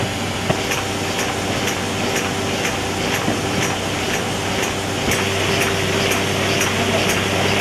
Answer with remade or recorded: recorded